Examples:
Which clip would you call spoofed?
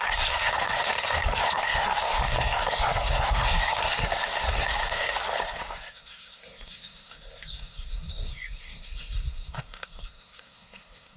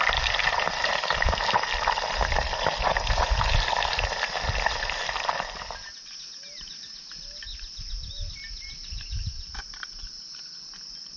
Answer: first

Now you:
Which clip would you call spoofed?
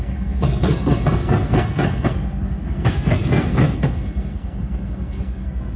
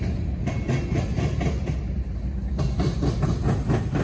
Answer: first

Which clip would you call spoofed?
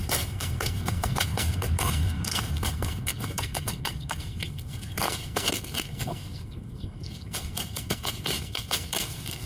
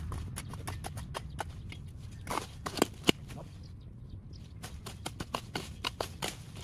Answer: first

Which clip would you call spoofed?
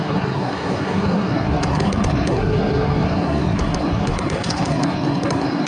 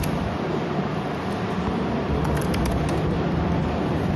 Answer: first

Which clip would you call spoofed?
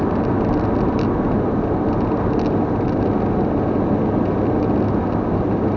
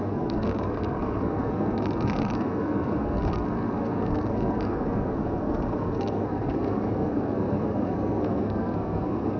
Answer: second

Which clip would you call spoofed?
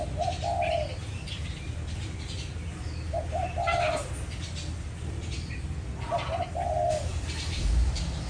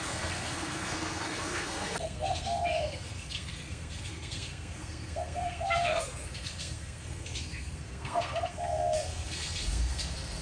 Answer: second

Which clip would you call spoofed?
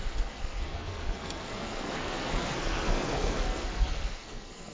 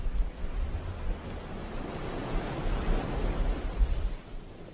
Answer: first